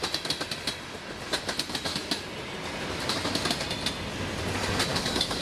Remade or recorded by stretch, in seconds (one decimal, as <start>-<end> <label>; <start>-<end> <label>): 0.0-4.9 recorded; 4.9-5.4 remade